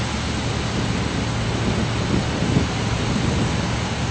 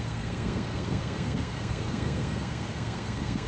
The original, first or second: first